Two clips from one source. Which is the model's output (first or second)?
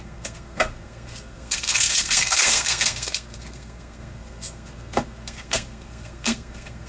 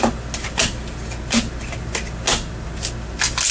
first